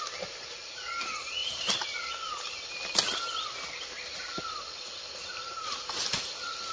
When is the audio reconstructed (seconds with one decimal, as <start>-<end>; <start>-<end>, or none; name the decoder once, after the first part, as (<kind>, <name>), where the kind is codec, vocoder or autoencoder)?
none